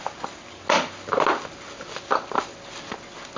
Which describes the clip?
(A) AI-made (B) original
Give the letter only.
B